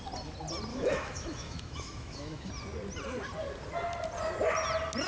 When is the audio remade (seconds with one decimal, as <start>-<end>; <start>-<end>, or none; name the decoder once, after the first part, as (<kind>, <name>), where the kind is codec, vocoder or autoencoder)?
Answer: 0.7-2.5 (autoencoder, DAC-VAE)